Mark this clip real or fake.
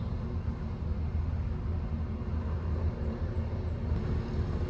real